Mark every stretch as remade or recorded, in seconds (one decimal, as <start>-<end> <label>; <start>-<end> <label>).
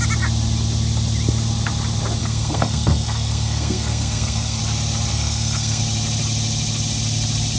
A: 0.0-2.2 recorded; 2.2-4.6 remade; 4.6-5.1 recorded; 5.1-5.8 remade; 5.8-7.6 recorded